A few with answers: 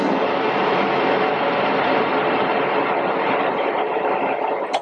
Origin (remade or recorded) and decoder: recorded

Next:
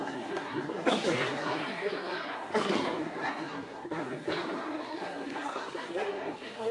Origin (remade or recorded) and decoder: remade, codec, SNAC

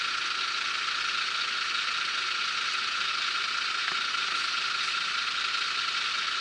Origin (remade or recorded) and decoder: recorded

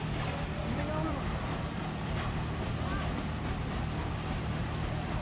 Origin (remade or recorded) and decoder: recorded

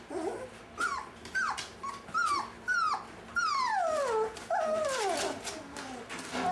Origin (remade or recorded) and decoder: recorded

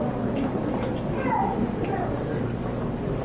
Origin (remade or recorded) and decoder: remade, vocoder, BigVGAN v2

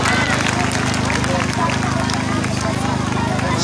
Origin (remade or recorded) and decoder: recorded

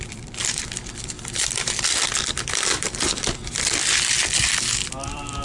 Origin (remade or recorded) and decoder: remade, vocoder, BigVGAN v2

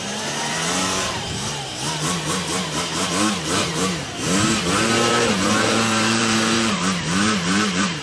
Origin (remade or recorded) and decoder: remade, vocoder, BigVGAN v2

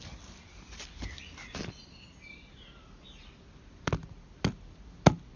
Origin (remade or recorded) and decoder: recorded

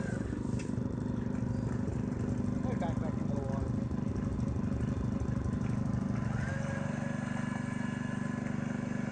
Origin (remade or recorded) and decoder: recorded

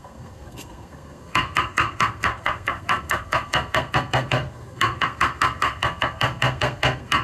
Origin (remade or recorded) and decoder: remade, codec, SNAC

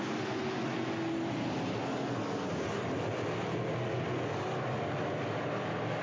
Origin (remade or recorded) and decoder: recorded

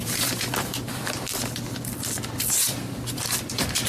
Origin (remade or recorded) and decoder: remade, vocoder, BigVGAN v2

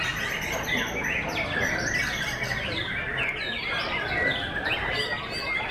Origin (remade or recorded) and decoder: recorded